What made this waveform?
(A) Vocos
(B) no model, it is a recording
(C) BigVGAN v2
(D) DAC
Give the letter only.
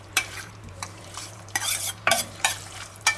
C